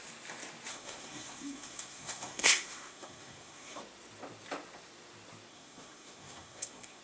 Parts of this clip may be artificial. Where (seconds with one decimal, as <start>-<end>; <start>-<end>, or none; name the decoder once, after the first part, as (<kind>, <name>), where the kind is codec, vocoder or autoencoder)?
0.7-3.8 (codec, SNAC); 5.5-7.0